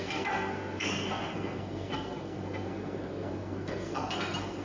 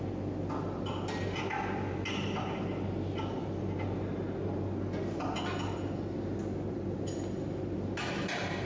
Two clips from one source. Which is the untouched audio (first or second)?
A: second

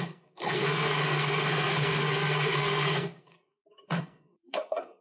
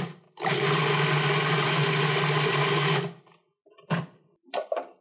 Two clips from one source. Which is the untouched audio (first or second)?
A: second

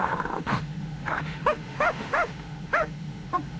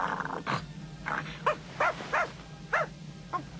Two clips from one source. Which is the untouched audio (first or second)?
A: second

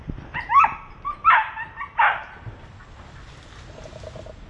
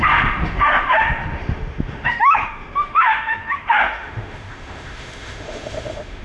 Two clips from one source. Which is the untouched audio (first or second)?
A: first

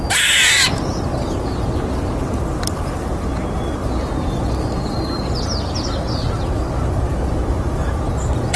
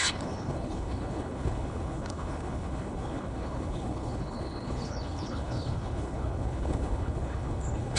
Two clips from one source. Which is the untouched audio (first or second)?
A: first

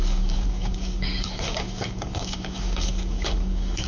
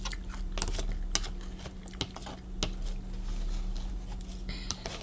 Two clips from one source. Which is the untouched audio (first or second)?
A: second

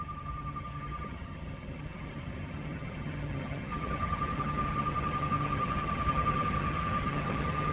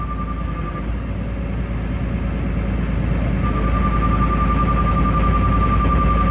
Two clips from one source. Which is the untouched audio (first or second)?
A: second